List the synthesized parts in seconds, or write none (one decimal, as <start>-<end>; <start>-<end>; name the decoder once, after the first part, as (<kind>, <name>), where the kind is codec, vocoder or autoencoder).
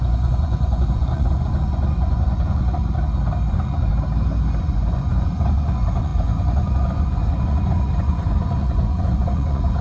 0.0-2.8 (vocoder, Vocos); 3.5-3.9; 4.6-9.8